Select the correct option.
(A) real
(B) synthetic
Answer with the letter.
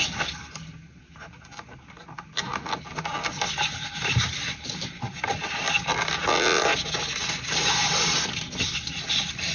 A